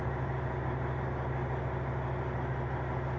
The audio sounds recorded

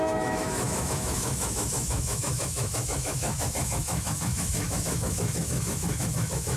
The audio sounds remade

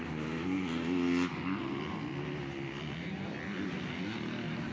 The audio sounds recorded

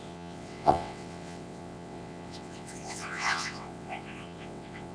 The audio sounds remade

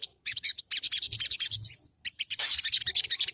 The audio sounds recorded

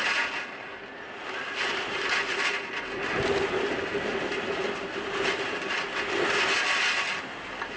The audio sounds recorded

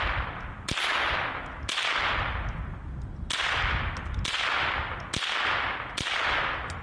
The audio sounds recorded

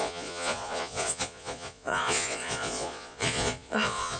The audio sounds remade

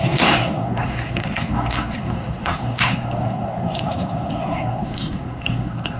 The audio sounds remade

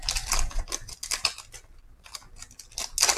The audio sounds recorded